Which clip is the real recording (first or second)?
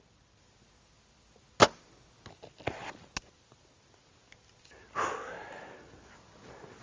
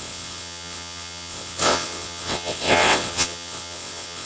first